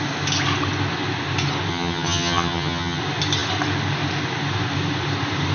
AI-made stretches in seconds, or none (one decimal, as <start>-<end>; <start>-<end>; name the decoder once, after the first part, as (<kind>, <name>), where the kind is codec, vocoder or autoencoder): 1.7-3.0 (vocoder, HiFi-GAN)